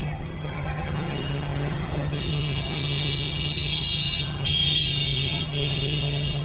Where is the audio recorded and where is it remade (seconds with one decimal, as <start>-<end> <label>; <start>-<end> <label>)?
0.0-6.4 remade